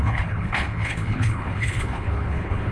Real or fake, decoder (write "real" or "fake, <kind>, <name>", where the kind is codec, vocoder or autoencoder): fake, codec, HILCodec